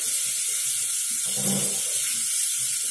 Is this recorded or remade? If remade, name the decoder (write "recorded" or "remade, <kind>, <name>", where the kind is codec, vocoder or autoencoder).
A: recorded